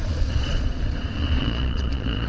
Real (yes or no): no